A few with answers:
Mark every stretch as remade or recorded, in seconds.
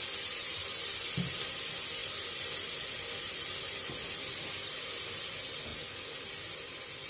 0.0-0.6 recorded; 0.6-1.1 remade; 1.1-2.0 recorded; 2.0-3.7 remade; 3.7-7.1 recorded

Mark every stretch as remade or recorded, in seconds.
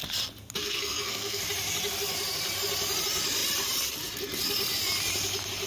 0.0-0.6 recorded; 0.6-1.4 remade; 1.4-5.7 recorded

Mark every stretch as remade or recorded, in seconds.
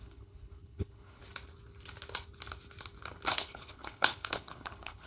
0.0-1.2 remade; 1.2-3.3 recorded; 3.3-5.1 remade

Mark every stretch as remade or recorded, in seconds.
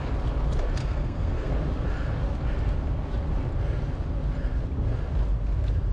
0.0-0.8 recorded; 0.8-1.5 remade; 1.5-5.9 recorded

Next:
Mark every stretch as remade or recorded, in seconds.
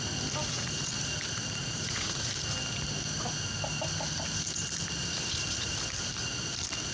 0.0-0.4 recorded; 0.4-0.9 remade; 0.9-1.6 recorded; 1.6-2.3 remade; 2.3-6.9 recorded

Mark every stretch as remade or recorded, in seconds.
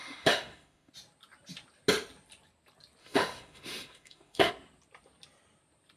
0.0-0.9 remade; 0.9-3.0 recorded; 3.0-4.5 remade; 4.5-6.0 recorded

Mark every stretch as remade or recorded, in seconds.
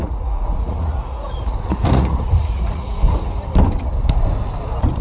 0.0-3.0 remade; 3.0-5.0 recorded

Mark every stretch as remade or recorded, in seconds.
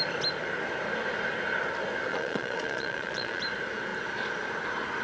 0.0-2.1 recorded; 2.1-3.4 remade; 3.4-5.0 recorded